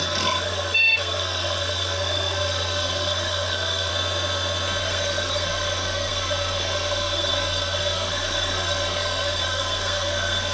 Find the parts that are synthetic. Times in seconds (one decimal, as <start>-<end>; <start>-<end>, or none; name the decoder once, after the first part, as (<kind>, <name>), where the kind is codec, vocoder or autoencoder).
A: 0.0-3.9 (codec, SNAC); 4.8-10.5